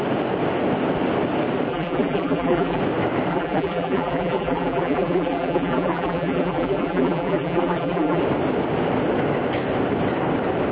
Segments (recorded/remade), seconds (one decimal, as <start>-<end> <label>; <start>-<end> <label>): 0.0-1.7 recorded; 1.7-2.8 remade; 2.8-3.3 recorded; 3.3-8.2 remade; 8.2-10.7 recorded